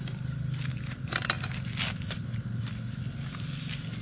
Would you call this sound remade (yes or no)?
no